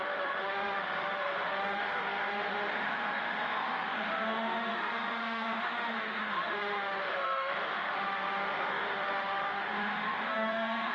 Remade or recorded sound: remade